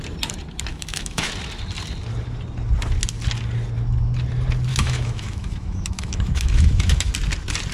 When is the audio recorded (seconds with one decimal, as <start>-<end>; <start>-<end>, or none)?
0.0-0.7; 1.3-4.7; 7.1-7.7